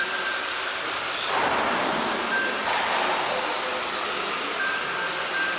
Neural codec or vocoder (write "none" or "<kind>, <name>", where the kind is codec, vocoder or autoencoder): none